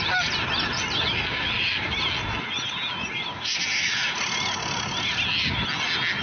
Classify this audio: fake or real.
real